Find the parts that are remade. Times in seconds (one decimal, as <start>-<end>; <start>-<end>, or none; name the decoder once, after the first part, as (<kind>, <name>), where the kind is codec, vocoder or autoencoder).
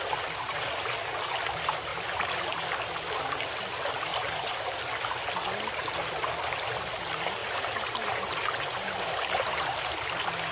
1.9-3.2 (vocoder, BigVGAN v2); 4.1-4.6; 7.4-9.0